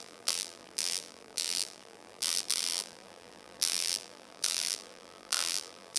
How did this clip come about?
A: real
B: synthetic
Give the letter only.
B